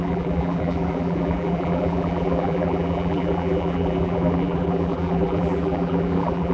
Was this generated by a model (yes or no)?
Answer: yes